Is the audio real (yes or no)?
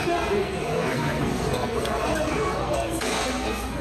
no